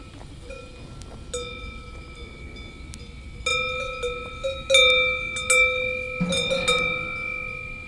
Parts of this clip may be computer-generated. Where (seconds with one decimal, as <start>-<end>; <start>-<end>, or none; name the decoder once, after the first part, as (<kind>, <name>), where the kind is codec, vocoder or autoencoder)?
none